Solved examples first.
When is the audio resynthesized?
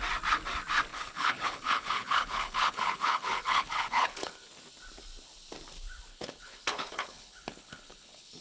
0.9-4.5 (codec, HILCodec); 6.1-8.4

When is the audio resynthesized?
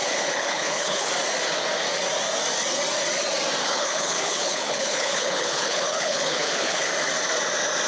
0.0-1.1 (codec, HILCodec); 3.6-6.9